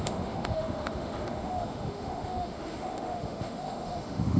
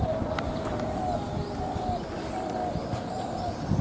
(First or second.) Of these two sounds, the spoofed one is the first